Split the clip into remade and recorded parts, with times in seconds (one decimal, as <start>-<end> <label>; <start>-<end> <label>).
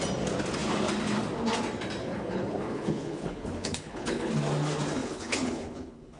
0.0-2.0 recorded; 2.0-4.3 remade; 4.3-5.0 recorded; 5.0-6.2 remade